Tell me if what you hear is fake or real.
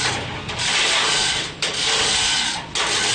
real